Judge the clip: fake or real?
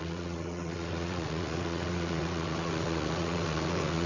fake